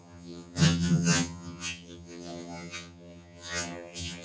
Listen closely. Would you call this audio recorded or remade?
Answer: remade